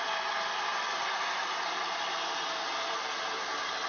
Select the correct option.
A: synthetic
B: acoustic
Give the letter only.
B